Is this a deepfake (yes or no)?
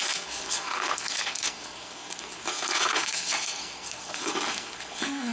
yes